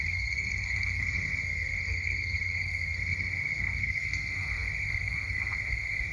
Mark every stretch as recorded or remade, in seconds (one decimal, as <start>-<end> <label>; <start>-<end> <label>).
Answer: 0.0-6.1 remade